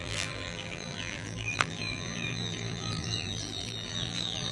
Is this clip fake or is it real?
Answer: fake